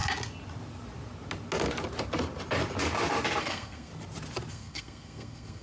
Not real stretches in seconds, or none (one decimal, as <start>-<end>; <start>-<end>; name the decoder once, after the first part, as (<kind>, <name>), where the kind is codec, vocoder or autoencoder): 3.4-3.9 (codec, SNAC); 4.5-5.6